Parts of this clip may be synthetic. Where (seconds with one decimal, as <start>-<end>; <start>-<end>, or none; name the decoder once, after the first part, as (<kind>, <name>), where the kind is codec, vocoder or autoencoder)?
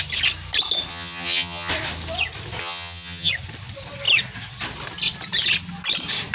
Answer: 0.9-1.7 (vocoder, HiFi-GAN); 2.6-3.3